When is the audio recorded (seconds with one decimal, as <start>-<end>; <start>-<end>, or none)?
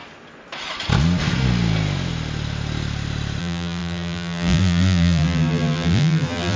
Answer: 0.0-3.4